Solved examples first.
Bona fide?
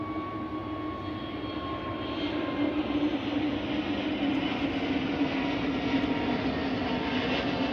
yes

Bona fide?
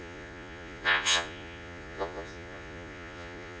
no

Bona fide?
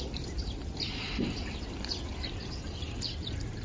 yes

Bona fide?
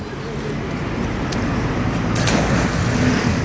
yes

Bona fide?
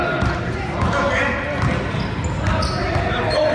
yes